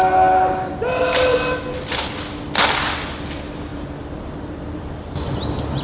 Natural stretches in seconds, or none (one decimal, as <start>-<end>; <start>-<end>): 0.0-3.7; 4.8-5.8